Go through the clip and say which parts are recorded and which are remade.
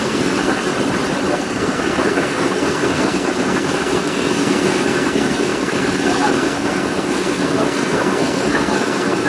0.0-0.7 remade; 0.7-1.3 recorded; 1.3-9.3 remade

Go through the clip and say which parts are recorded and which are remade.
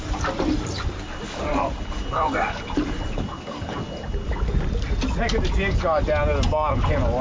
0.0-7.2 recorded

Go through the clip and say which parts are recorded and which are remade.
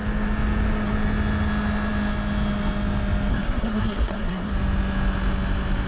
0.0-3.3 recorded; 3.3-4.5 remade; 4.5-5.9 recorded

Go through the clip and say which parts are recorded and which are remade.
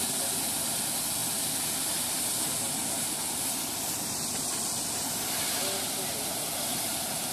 0.0-7.3 recorded